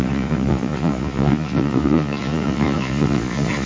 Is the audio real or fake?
fake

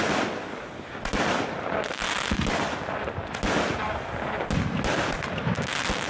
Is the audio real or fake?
real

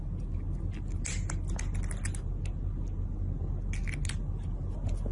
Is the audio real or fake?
real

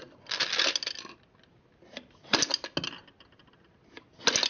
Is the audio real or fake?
real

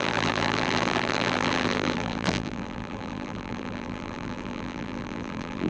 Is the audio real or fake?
fake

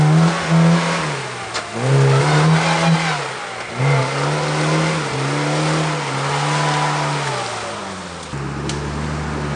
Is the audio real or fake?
real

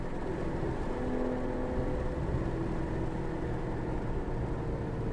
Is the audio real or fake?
real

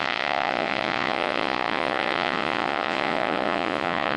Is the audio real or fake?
fake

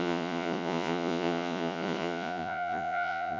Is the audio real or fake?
fake